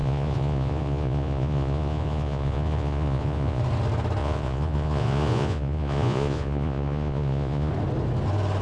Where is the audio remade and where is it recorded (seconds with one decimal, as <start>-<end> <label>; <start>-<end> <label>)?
0.0-3.6 remade; 3.6-4.2 recorded; 4.2-7.7 remade; 7.7-8.6 recorded